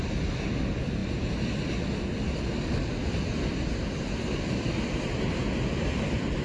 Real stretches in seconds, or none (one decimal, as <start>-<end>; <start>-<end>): 0.0-6.4